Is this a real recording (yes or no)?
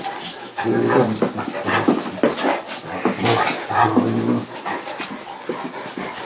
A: yes